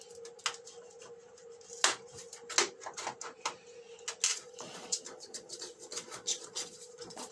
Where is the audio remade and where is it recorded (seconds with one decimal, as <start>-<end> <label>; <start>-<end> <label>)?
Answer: 0.0-4.3 recorded; 4.3-7.3 remade